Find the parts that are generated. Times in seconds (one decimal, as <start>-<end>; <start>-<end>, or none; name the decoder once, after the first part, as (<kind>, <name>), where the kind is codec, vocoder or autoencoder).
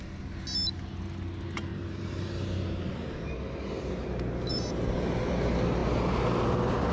1.7-2.9 (vocoder, BigVGAN v2); 4.5-5.0